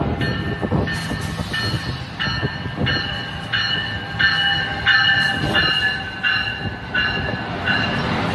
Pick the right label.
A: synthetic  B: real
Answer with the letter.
B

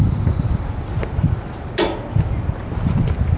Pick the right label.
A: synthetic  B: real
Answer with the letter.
B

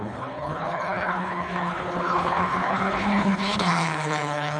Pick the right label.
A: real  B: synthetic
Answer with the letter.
B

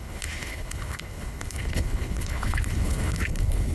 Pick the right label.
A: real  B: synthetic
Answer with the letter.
B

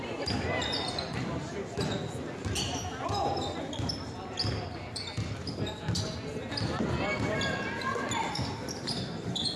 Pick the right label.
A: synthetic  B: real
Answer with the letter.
B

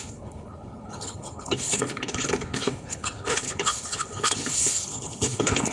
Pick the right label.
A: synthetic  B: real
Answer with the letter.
A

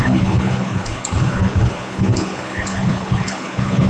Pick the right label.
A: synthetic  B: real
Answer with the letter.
A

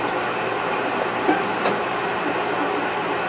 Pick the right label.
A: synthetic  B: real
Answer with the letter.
B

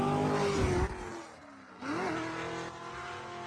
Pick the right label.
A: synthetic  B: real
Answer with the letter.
B